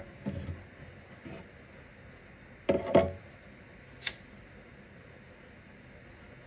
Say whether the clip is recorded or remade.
recorded